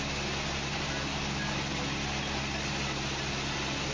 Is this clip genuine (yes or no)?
yes